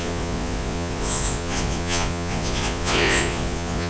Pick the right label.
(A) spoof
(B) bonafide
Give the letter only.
A